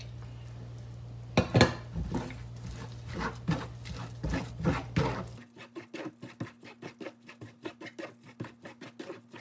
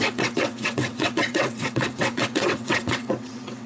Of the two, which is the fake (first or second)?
second